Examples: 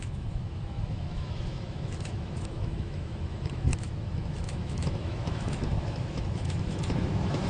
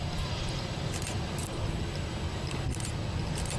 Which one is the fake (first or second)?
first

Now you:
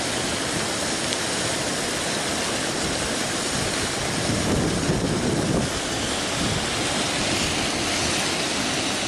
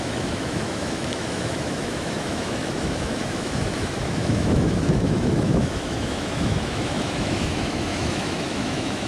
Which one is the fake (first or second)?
second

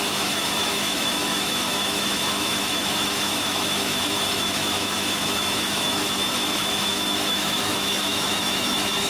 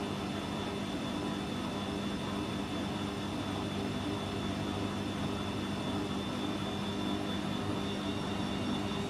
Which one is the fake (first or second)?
first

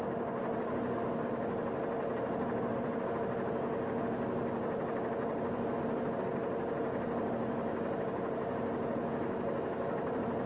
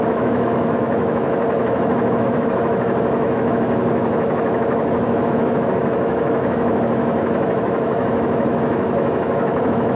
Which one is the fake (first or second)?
second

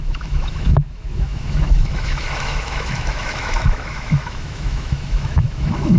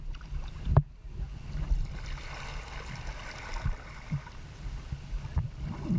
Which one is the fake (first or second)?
first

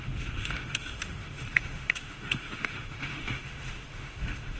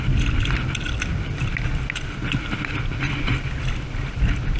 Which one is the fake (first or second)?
first